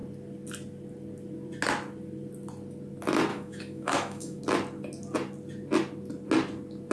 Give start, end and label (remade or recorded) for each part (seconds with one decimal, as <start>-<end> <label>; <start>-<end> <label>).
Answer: 0.0-3.3 recorded; 3.3-4.4 remade; 4.4-6.9 recorded